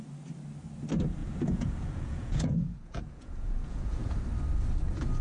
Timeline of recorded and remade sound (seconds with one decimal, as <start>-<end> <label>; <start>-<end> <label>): 0.0-1.2 recorded; 1.2-4.2 remade; 4.2-5.2 recorded